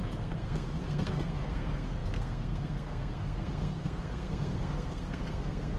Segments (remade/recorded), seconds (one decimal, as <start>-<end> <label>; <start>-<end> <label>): 0.0-5.8 remade

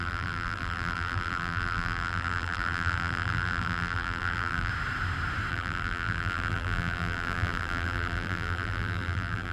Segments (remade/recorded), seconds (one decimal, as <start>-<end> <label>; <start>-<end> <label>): 0.0-4.7 remade; 4.7-5.5 recorded; 5.5-9.5 remade

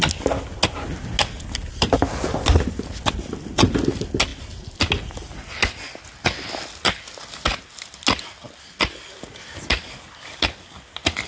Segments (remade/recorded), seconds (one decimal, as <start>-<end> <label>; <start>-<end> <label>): 0.0-11.3 recorded

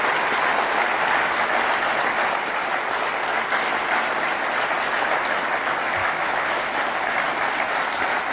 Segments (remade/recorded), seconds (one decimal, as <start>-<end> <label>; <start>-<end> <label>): 0.0-6.0 recorded; 6.0-6.8 remade; 6.8-8.3 recorded

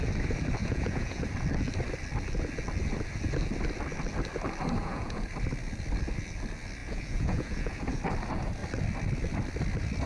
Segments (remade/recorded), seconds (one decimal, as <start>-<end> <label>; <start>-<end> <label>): 0.0-0.6 recorded; 0.6-1.2 remade; 1.2-4.8 recorded; 4.8-5.3 remade; 5.3-6.8 recorded; 6.8-8.0 remade; 8.0-10.1 recorded

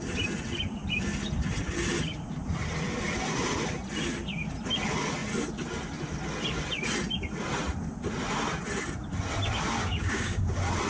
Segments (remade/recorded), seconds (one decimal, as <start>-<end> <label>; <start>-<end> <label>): 0.0-9.8 recorded; 9.8-10.5 remade; 10.5-10.9 recorded

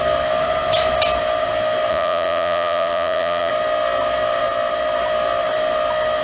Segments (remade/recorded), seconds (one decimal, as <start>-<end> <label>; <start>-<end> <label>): 0.0-1.9 recorded; 1.9-3.5 remade; 3.5-6.2 recorded